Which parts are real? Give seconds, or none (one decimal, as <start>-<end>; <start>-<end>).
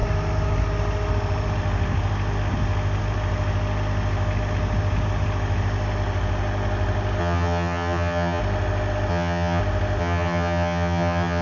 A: 0.0-7.2; 8.4-9.1; 9.6-10.0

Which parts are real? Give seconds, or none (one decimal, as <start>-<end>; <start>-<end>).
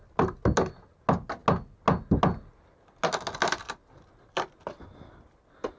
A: 0.0-5.8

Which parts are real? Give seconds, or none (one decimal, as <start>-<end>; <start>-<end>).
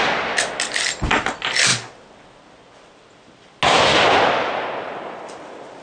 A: 0.0-5.8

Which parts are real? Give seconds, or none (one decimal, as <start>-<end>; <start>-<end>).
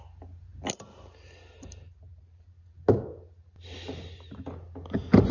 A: 0.0-5.3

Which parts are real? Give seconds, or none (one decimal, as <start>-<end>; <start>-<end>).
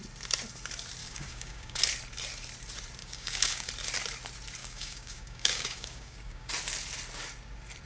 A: 0.0-1.0; 1.8-3.0; 3.7-4.6; 6.5-7.9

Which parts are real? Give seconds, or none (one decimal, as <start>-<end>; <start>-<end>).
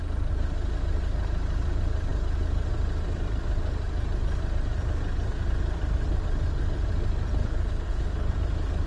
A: 0.0-7.4; 8.3-8.9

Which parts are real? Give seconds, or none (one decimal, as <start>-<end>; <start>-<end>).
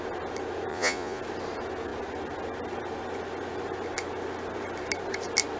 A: 0.0-0.7; 1.2-5.6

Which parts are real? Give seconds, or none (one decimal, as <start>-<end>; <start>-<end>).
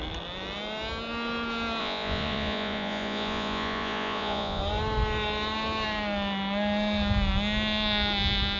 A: 0.0-1.8; 4.6-8.6